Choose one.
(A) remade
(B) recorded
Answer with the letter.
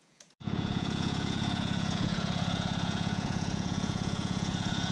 A